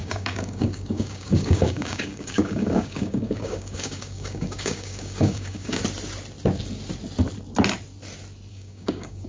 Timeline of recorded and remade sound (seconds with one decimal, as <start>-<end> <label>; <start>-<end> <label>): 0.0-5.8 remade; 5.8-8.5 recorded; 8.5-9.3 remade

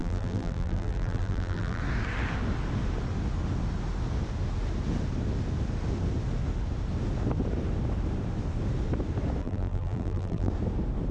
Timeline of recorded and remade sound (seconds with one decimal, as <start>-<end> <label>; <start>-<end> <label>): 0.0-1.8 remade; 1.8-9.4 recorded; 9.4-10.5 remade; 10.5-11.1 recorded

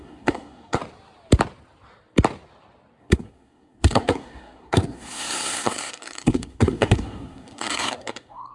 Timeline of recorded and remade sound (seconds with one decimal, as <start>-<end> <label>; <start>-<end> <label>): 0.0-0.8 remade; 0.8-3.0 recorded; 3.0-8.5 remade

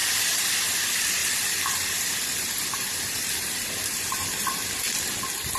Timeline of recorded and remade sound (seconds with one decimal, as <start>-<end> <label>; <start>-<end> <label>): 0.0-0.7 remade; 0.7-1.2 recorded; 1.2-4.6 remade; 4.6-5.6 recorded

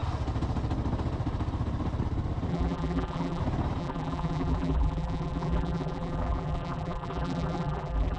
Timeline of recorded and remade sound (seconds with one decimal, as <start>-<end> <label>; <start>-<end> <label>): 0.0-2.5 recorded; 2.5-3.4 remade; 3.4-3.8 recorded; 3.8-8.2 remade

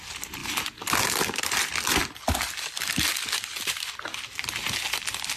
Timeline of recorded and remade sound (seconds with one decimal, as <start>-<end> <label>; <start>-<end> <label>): 0.0-5.4 recorded

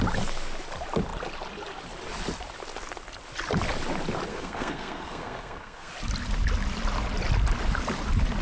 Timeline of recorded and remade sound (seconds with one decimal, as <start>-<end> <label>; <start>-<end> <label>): 0.0-4.3 recorded; 4.3-5.9 remade; 5.9-8.4 recorded